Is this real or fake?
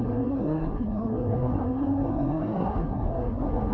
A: fake